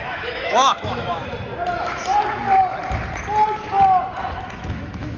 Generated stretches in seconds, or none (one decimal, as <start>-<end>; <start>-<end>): 0.0-1.2; 4.3-5.2